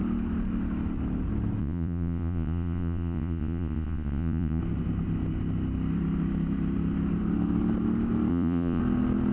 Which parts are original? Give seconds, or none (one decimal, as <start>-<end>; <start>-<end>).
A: 0.0-1.6; 4.6-8.3; 8.8-9.3